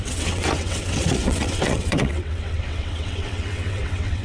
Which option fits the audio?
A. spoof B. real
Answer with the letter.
A